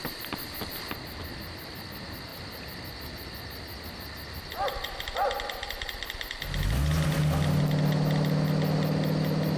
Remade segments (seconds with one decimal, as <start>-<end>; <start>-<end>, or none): none